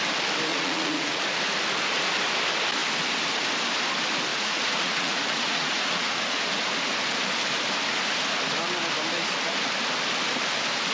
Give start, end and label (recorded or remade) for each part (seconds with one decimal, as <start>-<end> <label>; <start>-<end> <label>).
0.0-0.5 recorded; 0.5-1.2 remade; 1.2-4.3 recorded; 4.3-6.4 remade; 6.4-10.9 recorded